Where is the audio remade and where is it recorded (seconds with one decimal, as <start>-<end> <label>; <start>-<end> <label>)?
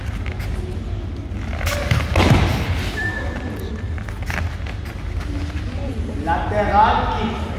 0.0-7.6 recorded